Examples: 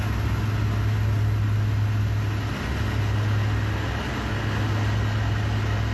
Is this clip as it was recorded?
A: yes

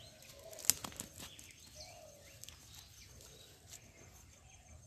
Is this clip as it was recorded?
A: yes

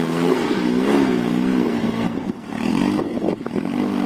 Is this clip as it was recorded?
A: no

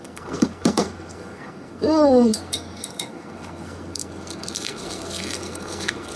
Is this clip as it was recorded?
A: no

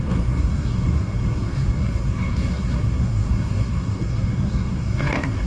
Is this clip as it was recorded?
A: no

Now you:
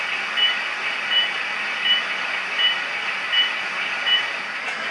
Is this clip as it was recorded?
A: yes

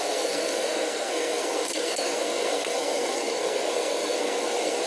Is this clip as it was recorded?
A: no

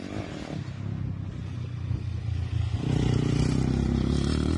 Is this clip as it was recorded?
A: yes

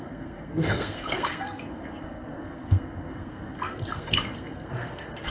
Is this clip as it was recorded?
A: no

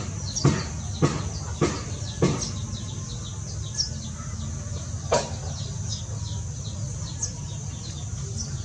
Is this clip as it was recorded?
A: yes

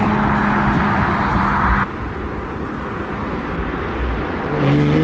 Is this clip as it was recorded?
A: yes